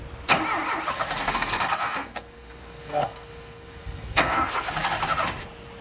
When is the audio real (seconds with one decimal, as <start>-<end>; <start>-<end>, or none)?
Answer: 0.0-1.2; 4.7-5.8